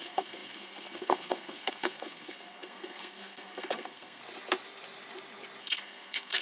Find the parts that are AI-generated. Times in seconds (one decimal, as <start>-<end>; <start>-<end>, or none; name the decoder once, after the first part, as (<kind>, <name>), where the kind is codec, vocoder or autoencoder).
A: 0.0-4.2 (codec, SNAC); 5.6-6.4